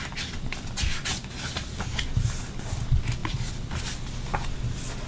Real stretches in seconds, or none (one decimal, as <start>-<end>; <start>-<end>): 0.0-5.1

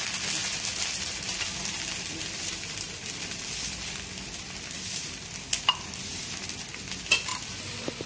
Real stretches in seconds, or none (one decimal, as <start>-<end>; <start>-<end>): 0.0-0.4; 5.3-7.3

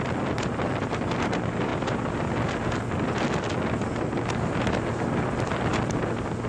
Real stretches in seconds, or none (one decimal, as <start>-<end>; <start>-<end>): 1.7-5.2; 5.7-6.5

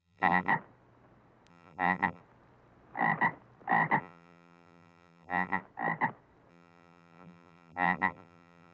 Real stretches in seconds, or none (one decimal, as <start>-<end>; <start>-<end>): 0.5-1.5; 2.2-4.0; 5.6-6.5

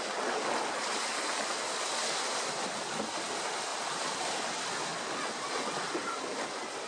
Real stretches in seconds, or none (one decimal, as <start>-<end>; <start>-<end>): 0.0-3.7; 4.5-6.9